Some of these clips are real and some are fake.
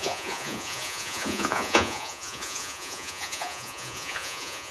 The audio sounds fake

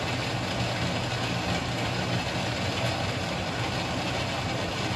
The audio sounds real